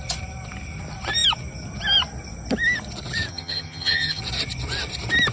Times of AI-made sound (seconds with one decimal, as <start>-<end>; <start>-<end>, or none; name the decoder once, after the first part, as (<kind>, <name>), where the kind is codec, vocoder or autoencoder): 3.3-4.2 (vocoder, HiFi-GAN)